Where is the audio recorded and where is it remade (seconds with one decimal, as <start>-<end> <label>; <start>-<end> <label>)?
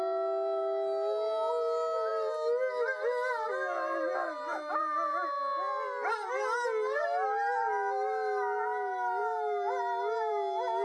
0.0-10.8 recorded